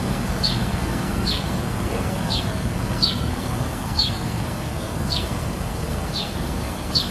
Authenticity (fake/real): fake